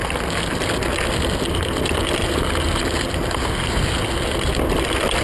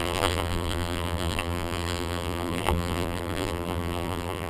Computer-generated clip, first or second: second